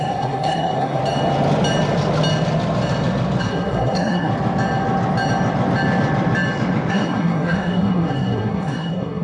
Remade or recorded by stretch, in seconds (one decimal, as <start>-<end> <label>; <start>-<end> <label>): 0.0-1.0 remade; 1.0-3.4 recorded; 3.4-4.3 remade; 4.3-6.9 recorded; 6.9-9.2 remade